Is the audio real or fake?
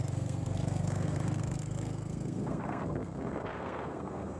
fake